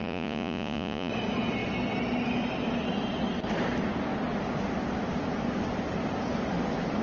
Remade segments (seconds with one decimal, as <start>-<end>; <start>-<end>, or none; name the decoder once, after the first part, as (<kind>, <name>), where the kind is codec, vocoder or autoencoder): 0.0-1.1 (vocoder, Vocos)

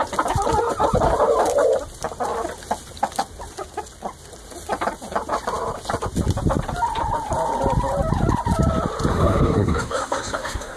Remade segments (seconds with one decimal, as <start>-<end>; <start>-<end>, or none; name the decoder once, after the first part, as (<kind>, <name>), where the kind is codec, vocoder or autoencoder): 9.1-10.8 (codec, SNAC)

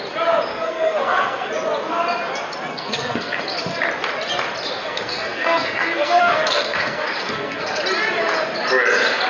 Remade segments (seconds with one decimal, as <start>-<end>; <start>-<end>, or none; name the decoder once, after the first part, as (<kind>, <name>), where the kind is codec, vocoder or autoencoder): 0.5-1.5 (codec, SNAC); 2.7-3.4; 4.8-7.8

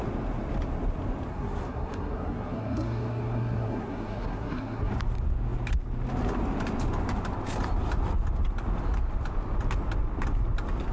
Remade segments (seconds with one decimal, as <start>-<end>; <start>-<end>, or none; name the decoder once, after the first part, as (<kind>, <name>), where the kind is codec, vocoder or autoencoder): 1.3-4.9 (codec, SNAC)

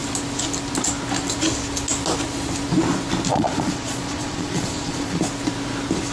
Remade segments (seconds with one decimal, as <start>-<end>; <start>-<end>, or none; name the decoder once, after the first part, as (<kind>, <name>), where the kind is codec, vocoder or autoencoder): 3.3-5.2 (vocoder, Vocos)

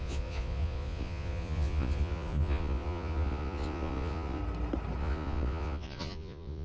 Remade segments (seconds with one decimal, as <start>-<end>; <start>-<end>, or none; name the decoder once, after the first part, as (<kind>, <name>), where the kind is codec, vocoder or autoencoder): 0.0-4.4 (vocoder, Vocos); 5.0-6.6

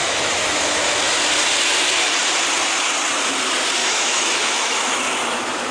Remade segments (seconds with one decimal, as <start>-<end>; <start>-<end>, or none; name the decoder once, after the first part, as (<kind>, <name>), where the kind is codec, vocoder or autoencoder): 0.0-0.6 (autoencoder, DAC-VAE); 3.8-5.0